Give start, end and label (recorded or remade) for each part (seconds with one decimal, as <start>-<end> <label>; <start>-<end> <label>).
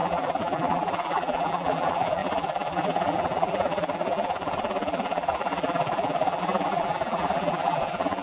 0.0-8.2 remade